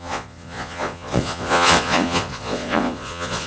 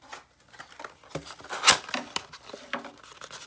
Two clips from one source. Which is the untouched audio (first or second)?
second